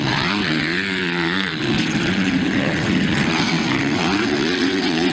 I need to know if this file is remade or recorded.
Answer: remade